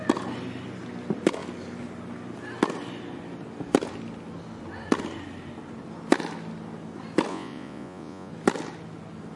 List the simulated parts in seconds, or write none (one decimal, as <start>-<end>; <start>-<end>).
7.3-8.3